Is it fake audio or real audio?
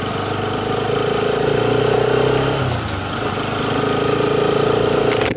real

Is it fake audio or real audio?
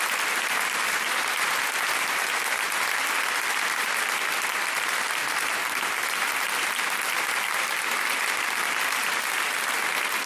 fake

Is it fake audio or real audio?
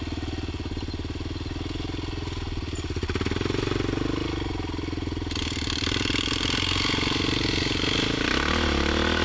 real